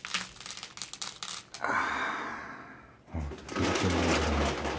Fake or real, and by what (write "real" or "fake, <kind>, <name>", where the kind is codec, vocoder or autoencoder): real